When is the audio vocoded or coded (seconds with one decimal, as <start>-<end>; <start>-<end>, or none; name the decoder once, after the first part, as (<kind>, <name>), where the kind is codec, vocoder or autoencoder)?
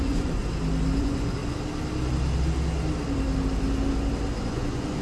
0.0-0.4 (vocoder, Vocos); 1.0-1.4; 4.4-5.0